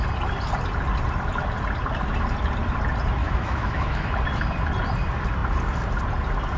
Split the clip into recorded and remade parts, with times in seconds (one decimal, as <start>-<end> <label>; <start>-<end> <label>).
0.0-3.2 recorded; 3.2-4.1 remade; 4.1-6.6 recorded